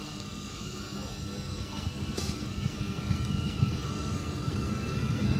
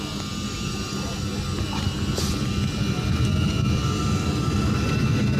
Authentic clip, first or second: second